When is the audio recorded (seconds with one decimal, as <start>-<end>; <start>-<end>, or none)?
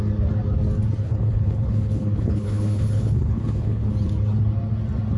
0.0-1.0; 3.9-5.2